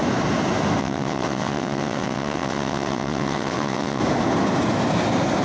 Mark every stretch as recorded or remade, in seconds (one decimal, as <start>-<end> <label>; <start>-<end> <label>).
0.0-0.8 recorded; 0.8-4.0 remade; 4.0-5.4 recorded